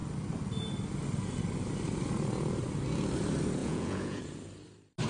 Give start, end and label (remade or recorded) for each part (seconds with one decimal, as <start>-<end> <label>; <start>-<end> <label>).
0.0-3.6 recorded; 3.6-4.2 remade; 4.2-5.1 recorded